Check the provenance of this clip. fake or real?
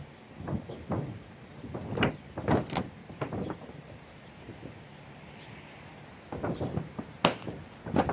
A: real